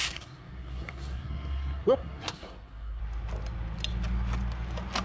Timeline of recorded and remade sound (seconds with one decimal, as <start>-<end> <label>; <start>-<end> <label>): 0.0-3.0 remade; 3.0-5.0 recorded